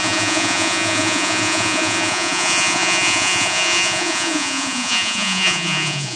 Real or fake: fake